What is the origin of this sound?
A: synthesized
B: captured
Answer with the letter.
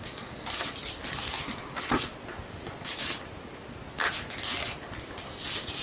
B